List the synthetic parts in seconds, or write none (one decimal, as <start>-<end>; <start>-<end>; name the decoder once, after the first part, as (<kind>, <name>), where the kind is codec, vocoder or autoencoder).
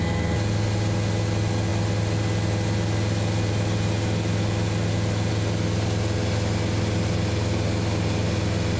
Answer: none